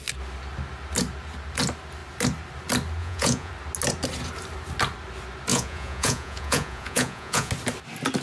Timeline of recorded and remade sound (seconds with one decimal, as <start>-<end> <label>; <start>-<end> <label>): 0.0-3.0 recorded; 3.0-3.5 remade; 3.5-5.5 recorded; 5.5-7.5 remade; 7.5-8.2 recorded